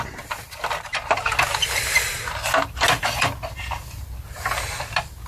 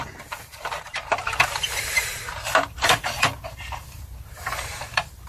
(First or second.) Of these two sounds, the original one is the first